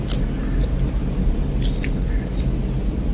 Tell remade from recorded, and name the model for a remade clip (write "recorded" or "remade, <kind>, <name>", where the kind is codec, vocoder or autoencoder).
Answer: recorded